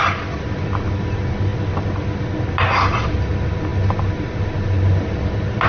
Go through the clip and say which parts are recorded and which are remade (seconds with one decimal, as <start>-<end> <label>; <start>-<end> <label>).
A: 0.0-5.7 recorded